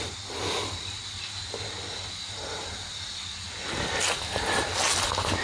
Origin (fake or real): real